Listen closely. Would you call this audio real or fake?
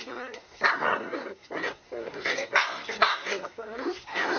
fake